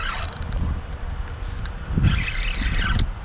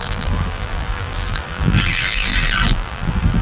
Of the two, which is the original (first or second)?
first